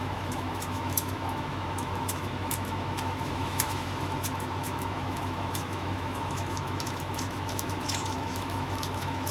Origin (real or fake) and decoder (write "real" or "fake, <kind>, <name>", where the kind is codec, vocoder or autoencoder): fake, autoencoder, DAC-VAE